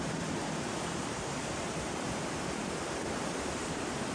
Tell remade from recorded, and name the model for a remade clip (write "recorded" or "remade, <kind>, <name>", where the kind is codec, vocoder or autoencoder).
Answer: remade, vocoder, BigVGAN v2